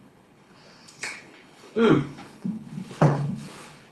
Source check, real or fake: fake